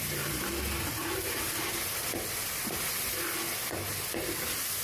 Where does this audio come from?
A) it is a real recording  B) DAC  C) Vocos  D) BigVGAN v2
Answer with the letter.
A